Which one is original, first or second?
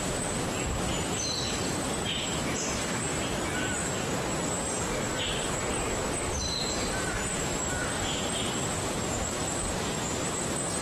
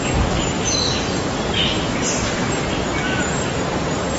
second